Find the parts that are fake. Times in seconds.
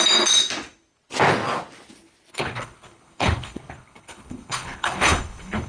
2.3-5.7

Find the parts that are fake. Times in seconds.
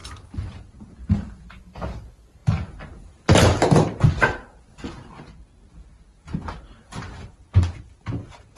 none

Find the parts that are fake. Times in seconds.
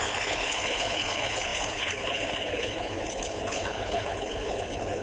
0.0-5.0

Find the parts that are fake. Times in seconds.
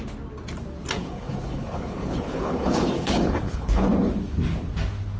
1.0-3.9